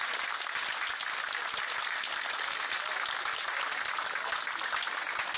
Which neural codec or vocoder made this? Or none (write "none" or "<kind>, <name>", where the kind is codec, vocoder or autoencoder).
none